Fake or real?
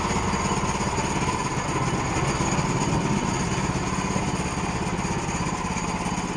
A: real